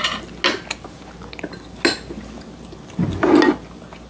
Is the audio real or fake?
real